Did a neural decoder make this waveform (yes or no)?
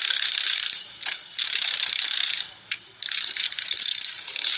no